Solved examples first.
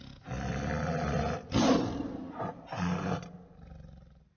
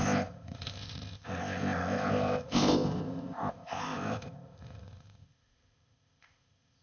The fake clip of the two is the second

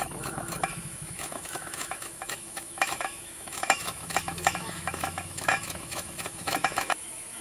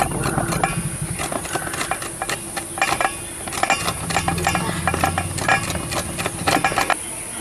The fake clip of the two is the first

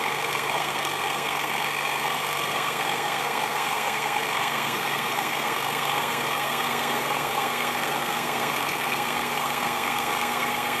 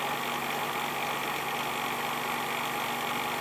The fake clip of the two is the first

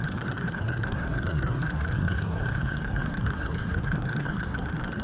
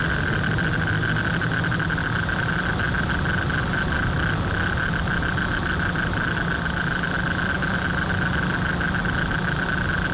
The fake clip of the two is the first